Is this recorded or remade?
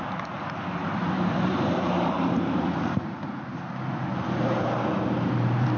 remade